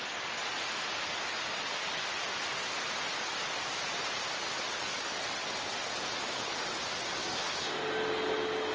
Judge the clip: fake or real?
real